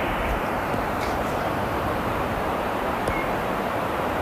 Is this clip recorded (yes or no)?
no